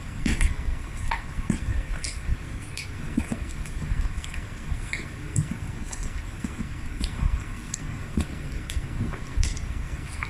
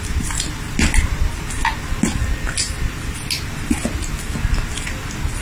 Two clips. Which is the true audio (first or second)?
second